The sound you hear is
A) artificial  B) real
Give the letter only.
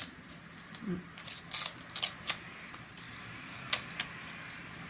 B